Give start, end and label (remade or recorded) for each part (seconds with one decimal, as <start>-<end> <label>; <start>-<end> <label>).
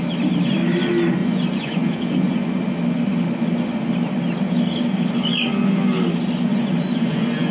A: 0.0-1.2 recorded; 1.2-2.6 remade; 2.6-6.5 recorded; 6.5-7.5 remade